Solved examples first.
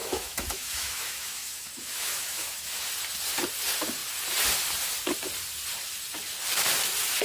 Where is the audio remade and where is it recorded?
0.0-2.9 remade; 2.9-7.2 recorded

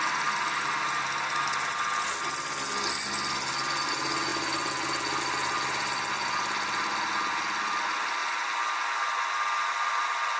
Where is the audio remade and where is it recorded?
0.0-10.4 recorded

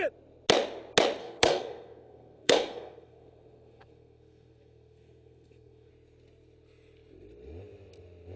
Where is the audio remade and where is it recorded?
0.0-1.2 recorded; 1.2-5.9 remade; 5.9-8.4 recorded